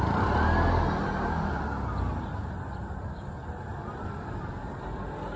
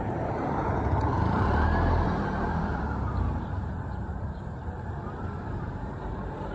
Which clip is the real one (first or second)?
first